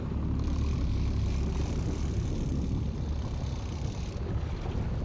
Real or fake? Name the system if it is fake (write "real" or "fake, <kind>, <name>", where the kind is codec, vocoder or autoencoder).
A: real